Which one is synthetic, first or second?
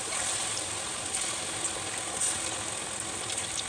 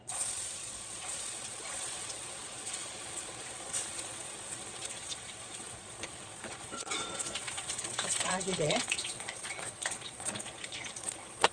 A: second